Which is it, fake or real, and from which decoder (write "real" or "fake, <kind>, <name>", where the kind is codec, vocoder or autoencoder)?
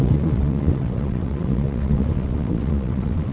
fake, vocoder, WaveNeXt